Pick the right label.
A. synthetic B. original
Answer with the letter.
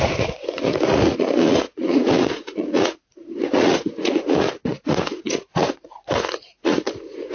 A